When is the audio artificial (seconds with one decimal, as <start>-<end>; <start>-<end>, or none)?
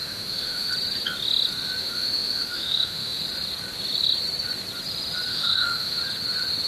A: 0.0-0.7; 1.8-3.2; 5.3-6.0